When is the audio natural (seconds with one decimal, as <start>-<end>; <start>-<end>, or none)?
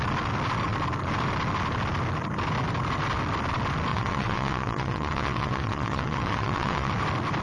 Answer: 0.0-3.9; 6.9-7.4